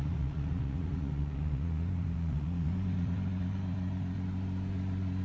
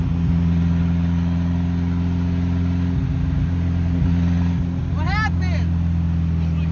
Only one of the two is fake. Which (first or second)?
first